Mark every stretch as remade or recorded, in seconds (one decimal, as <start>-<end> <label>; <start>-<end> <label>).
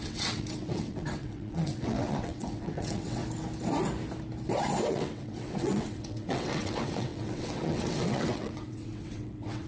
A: 0.0-3.2 remade; 3.2-4.9 recorded; 4.9-9.7 remade